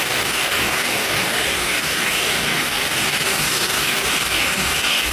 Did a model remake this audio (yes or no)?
yes